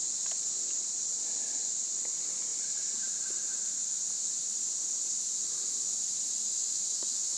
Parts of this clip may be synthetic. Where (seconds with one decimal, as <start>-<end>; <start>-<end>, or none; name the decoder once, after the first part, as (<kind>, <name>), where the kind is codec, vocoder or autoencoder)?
6.5-7.4 (autoencoder, DAC-VAE)